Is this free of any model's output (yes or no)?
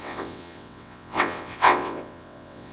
no